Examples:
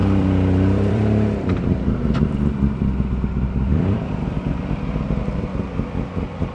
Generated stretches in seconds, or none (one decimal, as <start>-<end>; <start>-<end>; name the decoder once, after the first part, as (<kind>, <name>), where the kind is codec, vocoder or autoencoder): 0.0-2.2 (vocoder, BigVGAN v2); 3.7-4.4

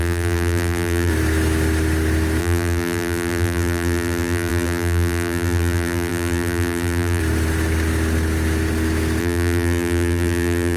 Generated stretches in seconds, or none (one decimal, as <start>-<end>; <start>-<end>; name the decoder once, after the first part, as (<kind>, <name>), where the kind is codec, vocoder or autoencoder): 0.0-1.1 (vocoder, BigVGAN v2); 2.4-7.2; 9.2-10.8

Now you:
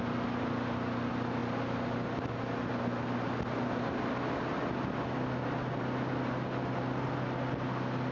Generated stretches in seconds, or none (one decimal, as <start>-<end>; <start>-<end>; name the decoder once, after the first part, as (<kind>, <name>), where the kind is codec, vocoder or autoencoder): none

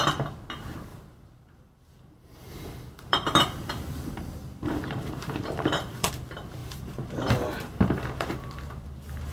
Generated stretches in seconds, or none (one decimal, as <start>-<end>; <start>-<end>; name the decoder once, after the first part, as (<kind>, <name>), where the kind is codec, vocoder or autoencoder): 0.9-6.1 (vocoder, BigVGAN v2); 6.6-8.3

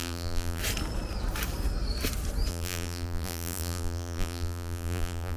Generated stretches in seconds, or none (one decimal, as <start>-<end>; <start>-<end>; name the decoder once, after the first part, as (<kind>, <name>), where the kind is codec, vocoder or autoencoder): 0.0-0.6 (vocoder, BigVGAN v2); 2.5-5.4

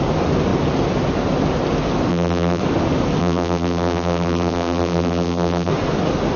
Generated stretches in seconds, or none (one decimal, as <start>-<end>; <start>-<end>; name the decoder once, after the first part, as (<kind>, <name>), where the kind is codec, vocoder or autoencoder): 2.1-2.6 (vocoder, BigVGAN v2); 3.2-5.7

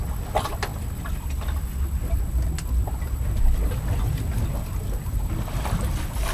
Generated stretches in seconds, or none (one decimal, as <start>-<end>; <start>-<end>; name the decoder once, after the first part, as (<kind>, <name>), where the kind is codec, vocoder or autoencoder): none